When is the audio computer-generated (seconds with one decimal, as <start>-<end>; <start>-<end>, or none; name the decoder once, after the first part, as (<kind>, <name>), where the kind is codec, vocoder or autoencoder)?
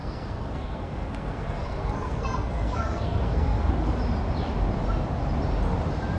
0.0-3.7 (codec, SNAC)